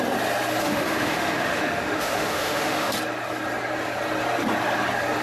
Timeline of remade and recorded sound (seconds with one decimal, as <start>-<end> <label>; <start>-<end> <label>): 0.0-0.6 recorded; 0.6-2.9 remade; 2.9-5.2 recorded